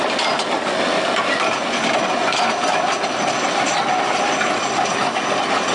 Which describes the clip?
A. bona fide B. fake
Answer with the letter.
A